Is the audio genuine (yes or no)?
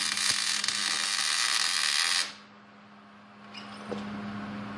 yes